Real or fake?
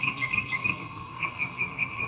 fake